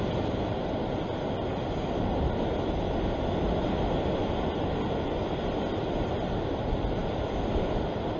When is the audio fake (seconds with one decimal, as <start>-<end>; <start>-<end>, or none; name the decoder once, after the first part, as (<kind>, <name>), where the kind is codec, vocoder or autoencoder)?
none